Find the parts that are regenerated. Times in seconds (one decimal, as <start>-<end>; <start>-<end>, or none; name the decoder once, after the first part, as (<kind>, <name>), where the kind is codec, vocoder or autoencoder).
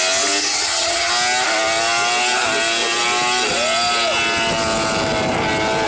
0.4-1.1 (vocoder, HiFi-GAN)